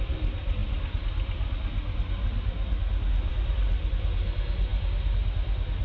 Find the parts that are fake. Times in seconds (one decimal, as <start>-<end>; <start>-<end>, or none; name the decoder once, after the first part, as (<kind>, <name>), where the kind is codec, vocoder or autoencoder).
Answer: none